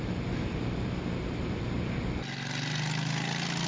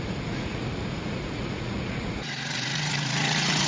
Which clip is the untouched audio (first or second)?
first